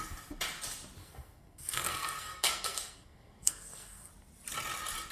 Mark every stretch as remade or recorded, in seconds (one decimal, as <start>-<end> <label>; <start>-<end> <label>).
0.0-1.0 recorded; 1.0-4.1 remade; 4.1-5.1 recorded